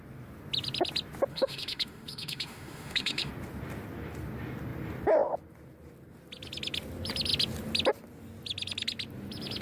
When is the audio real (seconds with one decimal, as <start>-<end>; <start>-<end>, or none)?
0.0-1.3; 3.3-9.6